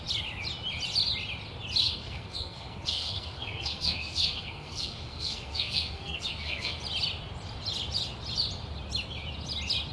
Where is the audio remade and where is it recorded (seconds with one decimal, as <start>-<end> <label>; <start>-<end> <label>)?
0.0-1.8 recorded; 1.8-6.8 remade; 6.8-9.9 recorded